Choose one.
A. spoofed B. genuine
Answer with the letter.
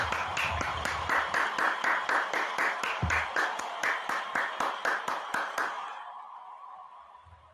A